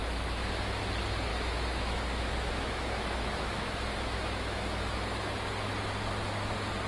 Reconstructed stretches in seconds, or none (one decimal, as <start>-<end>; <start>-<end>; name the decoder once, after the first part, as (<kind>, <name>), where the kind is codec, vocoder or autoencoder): 0.0-0.8 (autoencoder, DAC-VAE); 1.3-5.3